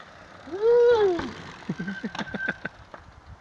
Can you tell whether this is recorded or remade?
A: recorded